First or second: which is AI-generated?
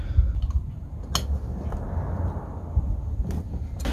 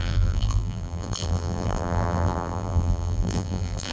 second